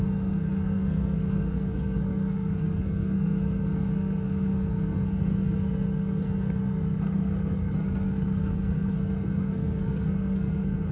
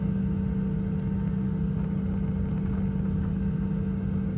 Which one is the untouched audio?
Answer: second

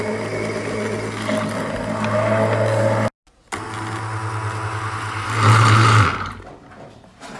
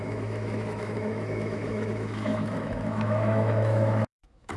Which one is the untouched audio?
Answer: first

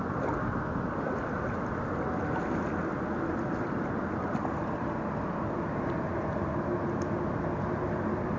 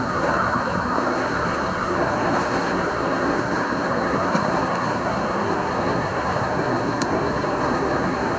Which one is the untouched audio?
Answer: first